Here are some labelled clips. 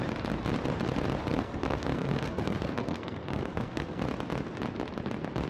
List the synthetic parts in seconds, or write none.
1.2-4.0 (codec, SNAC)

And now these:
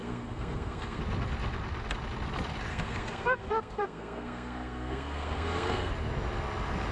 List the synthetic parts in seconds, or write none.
0.0-1.0 (codec, SNAC); 2.7-5.9

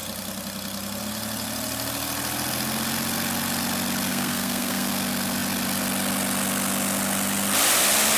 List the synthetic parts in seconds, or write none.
4.1-4.9 (codec, SNAC)

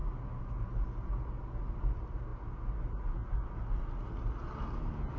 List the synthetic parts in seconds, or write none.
none

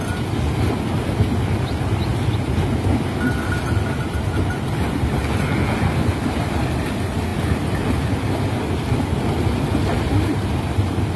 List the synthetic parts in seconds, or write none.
none